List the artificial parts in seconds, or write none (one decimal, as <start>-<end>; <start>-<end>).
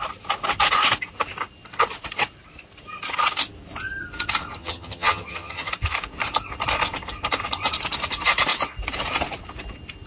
4.6-5.7